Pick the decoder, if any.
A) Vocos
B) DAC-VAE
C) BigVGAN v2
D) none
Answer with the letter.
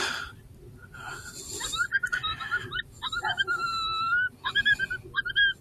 D